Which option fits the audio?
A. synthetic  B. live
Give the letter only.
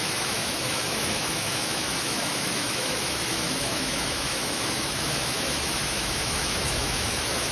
A